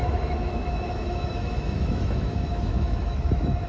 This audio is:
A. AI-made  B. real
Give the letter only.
A